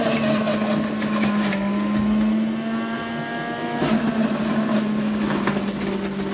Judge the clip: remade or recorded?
recorded